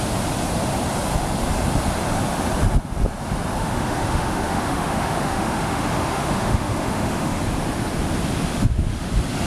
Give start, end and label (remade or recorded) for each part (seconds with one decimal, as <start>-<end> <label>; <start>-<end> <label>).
0.0-3.6 recorded; 3.6-7.4 remade; 7.4-8.5 recorded; 8.5-9.1 remade; 9.1-9.5 recorded